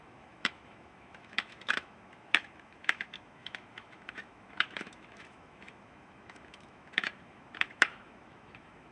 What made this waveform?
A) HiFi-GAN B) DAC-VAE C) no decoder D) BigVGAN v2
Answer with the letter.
B